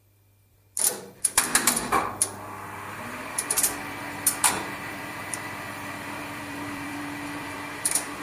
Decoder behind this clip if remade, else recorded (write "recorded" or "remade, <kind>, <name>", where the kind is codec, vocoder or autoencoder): remade, vocoder, BigVGAN v2